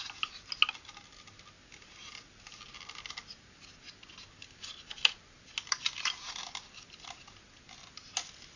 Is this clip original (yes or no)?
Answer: yes